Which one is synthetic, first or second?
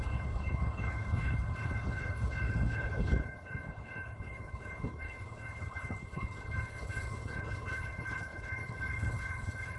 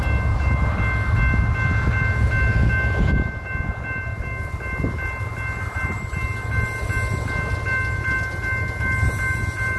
first